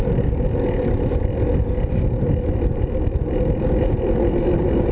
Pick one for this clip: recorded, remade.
recorded